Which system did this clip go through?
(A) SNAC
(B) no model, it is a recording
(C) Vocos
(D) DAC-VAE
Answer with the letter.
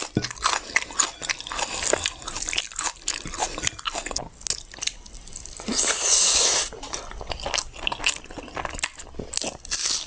B